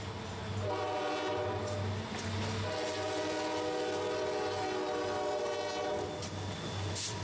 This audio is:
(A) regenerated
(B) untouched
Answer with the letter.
B